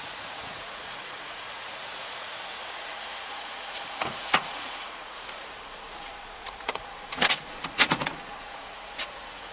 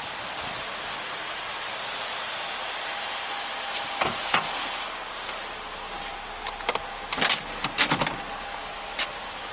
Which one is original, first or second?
second